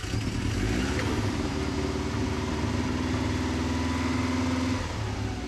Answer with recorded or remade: recorded